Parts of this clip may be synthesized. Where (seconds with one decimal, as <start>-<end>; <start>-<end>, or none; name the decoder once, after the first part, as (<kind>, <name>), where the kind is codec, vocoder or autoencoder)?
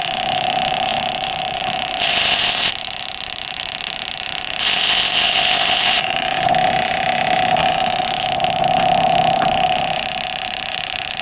2.0-2.7 (codec, ZipCodec); 4.6-6.0